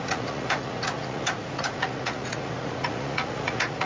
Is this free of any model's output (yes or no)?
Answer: no